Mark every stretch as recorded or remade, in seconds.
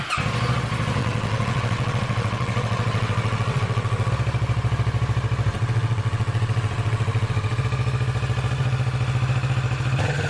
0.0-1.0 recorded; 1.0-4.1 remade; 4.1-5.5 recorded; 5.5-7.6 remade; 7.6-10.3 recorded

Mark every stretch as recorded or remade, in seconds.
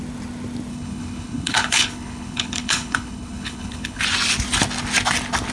0.0-0.7 recorded; 0.7-4.0 remade; 4.0-5.5 recorded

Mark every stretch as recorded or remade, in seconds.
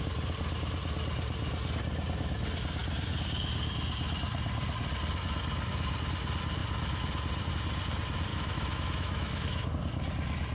0.0-8.3 recorded; 8.3-9.7 remade; 9.7-10.5 recorded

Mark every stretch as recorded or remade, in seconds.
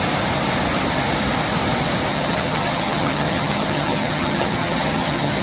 0.0-2.1 recorded; 2.1-5.4 remade